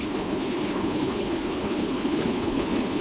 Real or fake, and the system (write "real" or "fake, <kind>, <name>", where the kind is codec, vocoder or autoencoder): fake, codec, HILCodec